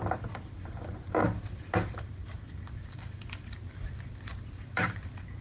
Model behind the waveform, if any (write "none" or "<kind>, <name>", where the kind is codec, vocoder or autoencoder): vocoder, BigVGAN v2